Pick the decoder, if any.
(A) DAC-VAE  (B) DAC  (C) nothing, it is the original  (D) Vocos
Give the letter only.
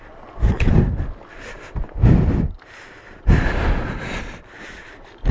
C